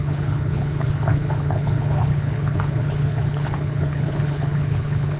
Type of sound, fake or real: fake